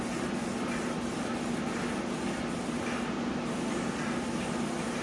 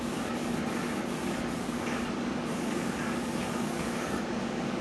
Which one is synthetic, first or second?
second